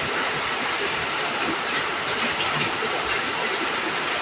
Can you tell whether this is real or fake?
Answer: fake